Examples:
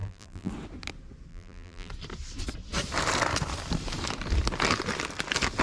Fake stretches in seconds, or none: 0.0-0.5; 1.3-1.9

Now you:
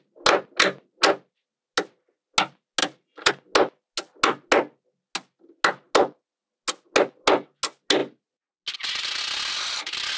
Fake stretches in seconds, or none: 2.8-3.3

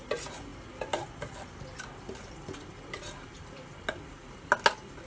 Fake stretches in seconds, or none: none